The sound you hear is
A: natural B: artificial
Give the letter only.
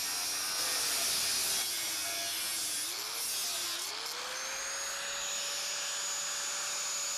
A